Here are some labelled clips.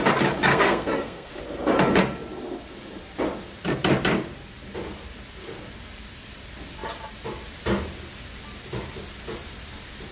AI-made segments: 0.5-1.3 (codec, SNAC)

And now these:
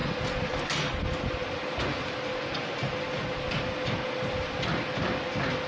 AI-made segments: none